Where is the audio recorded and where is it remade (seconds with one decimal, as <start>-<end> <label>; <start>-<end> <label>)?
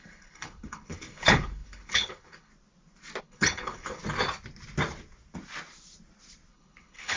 0.0-2.5 remade; 2.5-3.2 recorded; 3.2-4.0 remade; 4.0-6.5 recorded; 6.5-7.2 remade